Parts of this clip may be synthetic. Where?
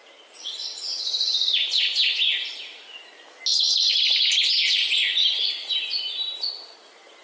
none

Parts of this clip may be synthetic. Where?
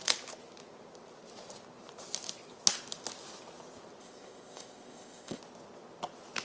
4.0-5.4 (codec, ZipCodec)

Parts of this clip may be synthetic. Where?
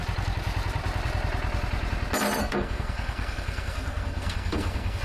2.4-5.0 (codec, SNAC)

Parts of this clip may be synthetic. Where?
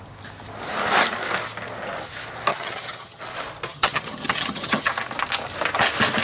2.5-3.2 (vocoder, HiFi-GAN); 3.7-4.9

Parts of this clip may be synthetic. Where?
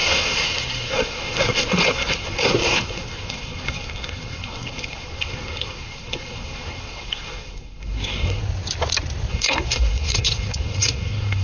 0.0-8.4 (codec, SNAC); 9.3-11.4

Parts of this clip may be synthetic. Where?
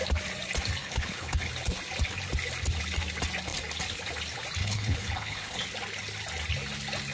0.8-1.5 (codec, HILCodec); 4.6-5.6